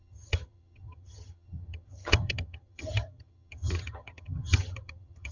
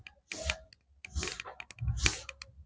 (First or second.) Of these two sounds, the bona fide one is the second